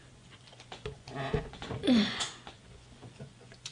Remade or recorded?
remade